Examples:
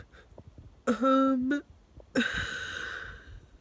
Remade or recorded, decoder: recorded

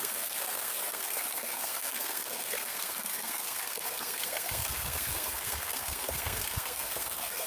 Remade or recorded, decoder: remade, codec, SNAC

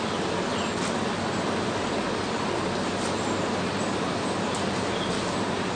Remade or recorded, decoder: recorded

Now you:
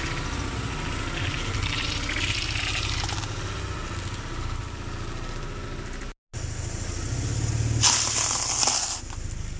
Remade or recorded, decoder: recorded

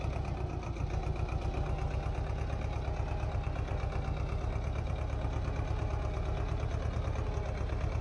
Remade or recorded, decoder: recorded